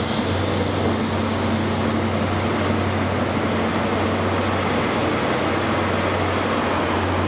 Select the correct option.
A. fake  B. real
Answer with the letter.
B